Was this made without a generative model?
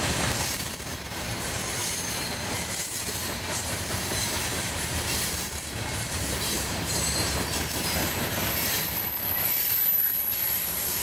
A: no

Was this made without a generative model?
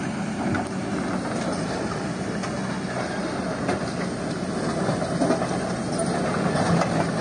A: yes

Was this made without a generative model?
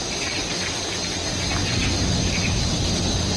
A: yes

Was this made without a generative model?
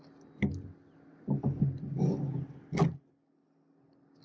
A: yes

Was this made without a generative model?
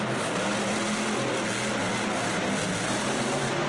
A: yes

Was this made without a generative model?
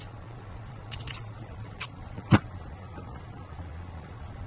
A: no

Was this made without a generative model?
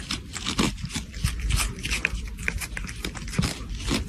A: no